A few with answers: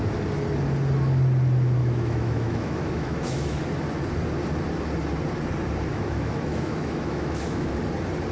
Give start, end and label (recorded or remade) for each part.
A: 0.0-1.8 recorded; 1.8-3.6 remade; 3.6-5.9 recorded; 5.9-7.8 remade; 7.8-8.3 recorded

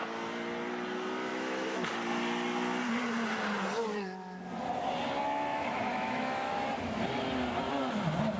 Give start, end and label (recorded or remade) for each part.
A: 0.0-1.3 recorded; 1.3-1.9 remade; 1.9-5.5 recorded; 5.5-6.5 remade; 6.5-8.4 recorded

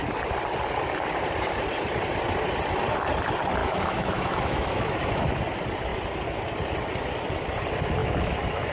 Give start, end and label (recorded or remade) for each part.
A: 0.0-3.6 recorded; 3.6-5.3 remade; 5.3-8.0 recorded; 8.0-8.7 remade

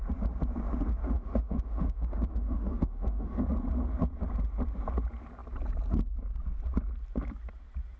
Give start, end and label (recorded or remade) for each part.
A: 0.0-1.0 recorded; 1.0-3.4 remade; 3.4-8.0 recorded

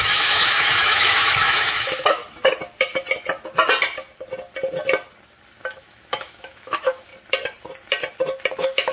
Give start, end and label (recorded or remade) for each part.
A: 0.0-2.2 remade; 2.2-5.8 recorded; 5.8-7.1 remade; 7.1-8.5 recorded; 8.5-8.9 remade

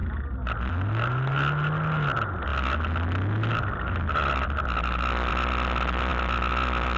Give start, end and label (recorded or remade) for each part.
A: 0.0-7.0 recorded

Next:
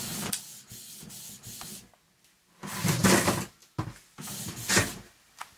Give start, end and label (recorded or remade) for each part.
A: 0.0-5.6 recorded